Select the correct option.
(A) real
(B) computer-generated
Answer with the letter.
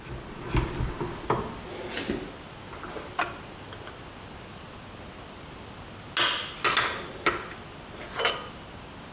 A